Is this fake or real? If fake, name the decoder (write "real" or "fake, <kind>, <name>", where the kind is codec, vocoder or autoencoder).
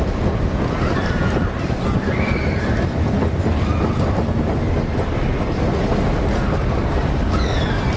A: real